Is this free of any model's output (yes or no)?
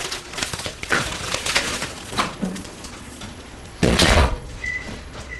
no